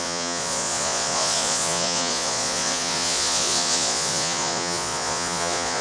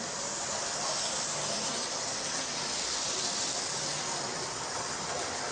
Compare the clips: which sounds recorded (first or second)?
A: second